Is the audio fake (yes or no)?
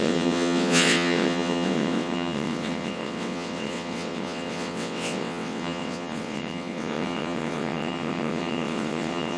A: yes